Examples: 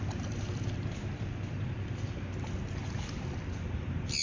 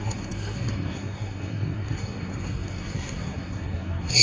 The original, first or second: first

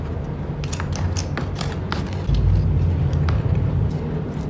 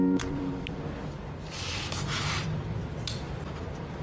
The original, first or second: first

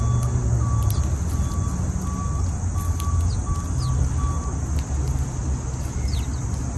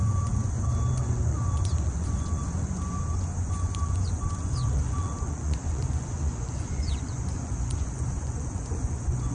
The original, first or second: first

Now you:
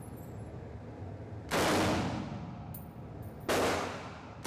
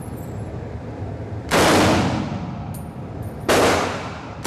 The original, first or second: first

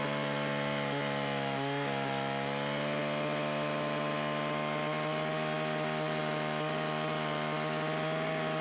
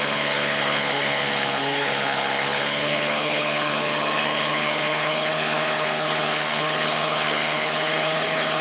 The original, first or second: first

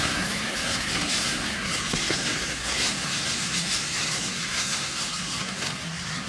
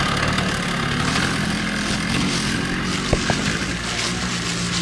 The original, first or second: second